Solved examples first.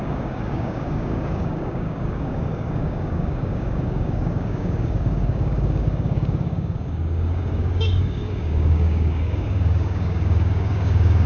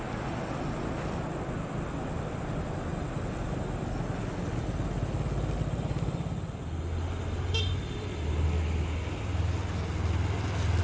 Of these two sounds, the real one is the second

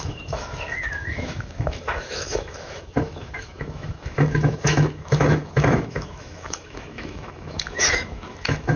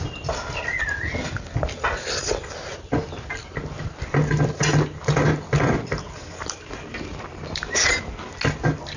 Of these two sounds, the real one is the second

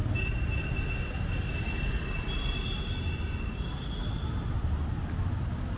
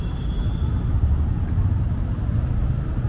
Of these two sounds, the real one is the first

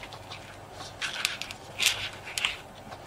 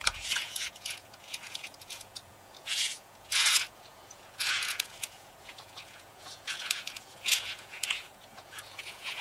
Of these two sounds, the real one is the first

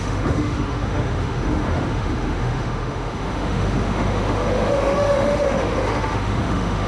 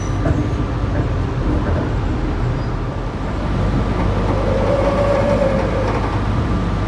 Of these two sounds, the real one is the second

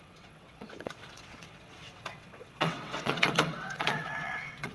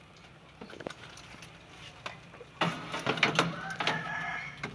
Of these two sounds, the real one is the second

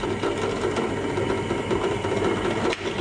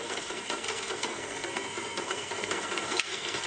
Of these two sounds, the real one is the first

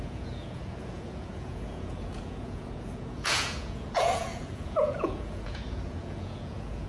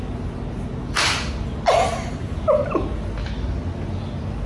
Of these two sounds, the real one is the second